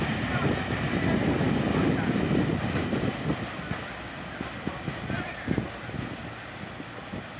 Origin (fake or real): real